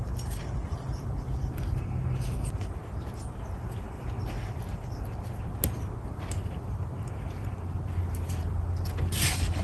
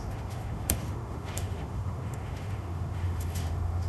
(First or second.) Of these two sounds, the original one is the first